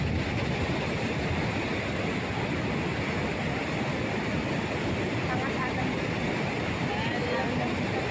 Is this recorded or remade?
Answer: recorded